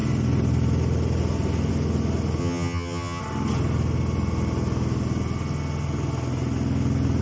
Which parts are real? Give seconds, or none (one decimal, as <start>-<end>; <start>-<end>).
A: 0.0-2.4; 3.2-7.2